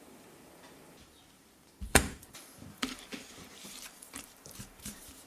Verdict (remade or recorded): remade